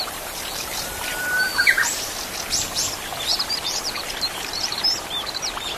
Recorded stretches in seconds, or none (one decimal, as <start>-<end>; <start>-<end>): 1.9-3.4